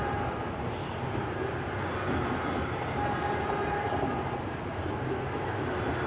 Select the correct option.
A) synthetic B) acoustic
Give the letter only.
B